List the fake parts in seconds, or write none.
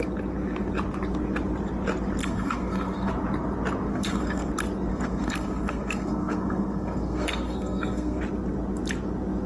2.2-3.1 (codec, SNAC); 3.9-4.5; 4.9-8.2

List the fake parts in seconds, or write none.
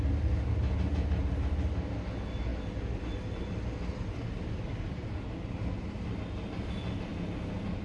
none